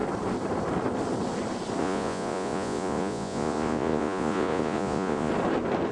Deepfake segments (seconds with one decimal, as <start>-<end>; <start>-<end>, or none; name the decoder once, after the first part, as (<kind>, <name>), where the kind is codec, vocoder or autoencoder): 1.8-5.3 (vocoder, Vocos)